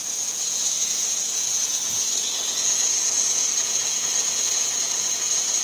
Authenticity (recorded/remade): remade